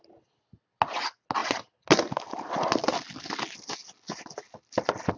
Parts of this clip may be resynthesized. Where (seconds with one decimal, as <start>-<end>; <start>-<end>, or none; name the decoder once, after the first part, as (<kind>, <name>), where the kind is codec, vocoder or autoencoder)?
none